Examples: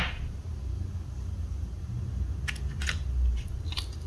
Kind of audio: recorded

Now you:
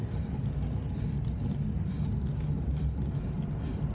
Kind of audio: recorded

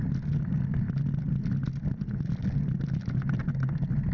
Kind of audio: recorded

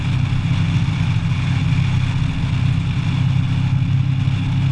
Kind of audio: recorded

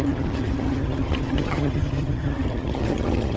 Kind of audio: remade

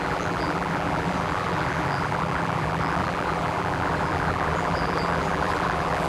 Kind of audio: remade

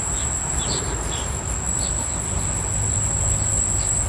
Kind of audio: recorded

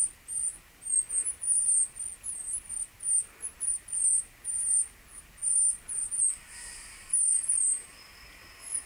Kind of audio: recorded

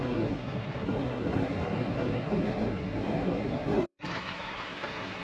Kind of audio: remade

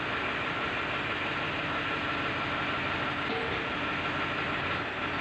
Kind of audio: recorded